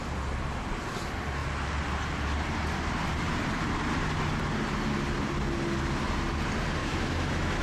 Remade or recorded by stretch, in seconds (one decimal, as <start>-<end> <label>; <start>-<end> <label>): 0.0-6.8 recorded; 6.8-7.6 remade